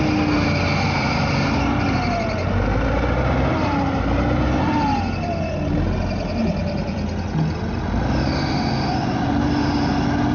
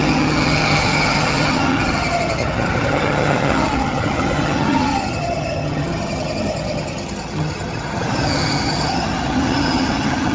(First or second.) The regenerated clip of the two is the second